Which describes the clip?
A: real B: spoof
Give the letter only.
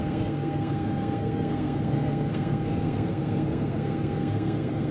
B